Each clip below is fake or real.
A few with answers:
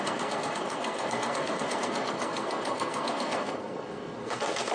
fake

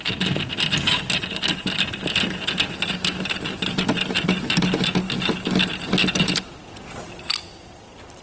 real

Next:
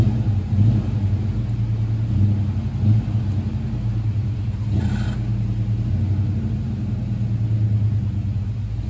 real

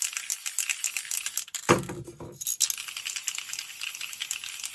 real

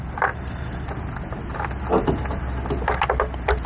real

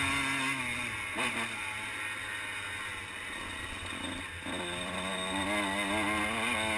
real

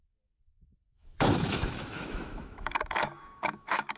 fake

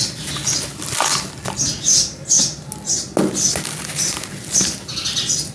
real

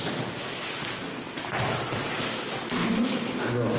real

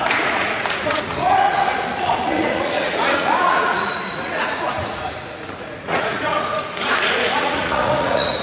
fake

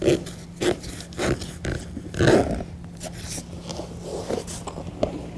real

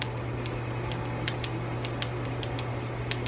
real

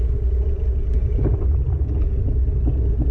real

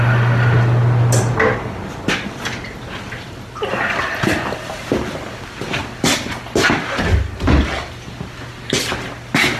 real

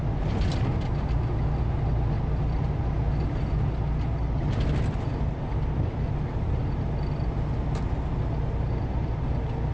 real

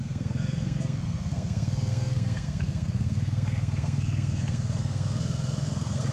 fake